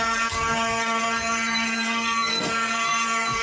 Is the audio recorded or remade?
remade